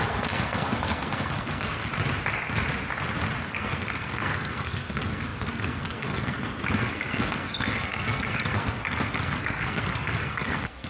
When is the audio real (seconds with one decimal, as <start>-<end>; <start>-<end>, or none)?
1.9-3.5